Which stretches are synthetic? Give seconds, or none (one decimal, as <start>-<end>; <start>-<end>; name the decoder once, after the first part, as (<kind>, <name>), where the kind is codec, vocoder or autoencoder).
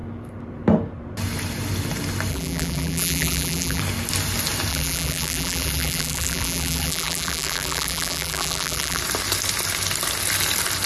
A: 2.3-3.8 (vocoder, BigVGAN v2); 4.7-9.0